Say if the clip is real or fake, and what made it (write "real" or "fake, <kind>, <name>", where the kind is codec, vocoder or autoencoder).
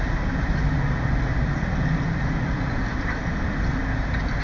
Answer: real